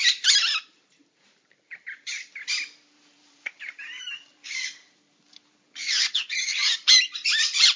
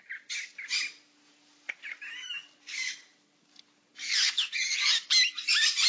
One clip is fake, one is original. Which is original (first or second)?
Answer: second